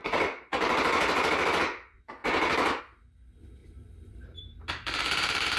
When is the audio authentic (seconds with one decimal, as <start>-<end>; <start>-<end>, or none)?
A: 0.8-2.2; 2.8-3.6